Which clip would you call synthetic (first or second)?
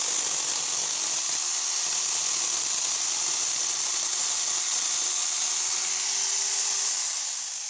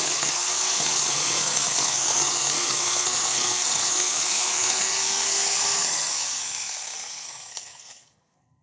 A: second